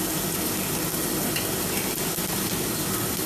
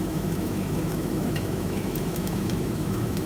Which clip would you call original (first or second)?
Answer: first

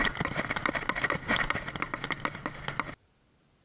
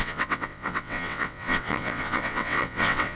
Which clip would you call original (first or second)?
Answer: first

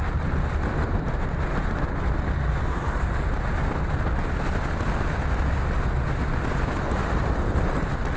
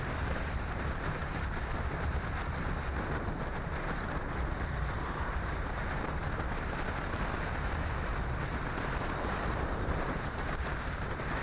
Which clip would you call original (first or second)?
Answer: first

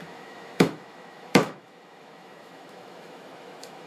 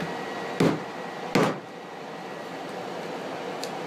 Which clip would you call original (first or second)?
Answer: second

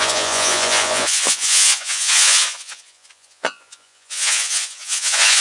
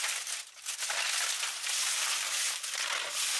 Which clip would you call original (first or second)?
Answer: second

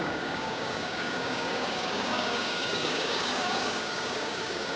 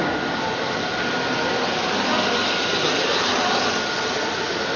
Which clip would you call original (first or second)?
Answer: second